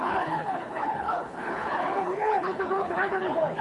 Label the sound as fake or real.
fake